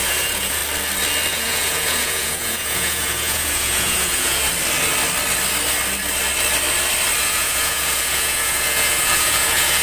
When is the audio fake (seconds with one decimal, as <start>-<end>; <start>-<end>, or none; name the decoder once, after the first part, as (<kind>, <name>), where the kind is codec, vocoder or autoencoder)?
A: 0.0-0.6 (vocoder, Vocos); 1.3-4.5; 7.2-9.8